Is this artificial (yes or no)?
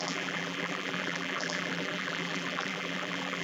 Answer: yes